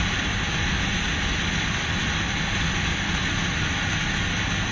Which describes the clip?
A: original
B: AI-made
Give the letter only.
A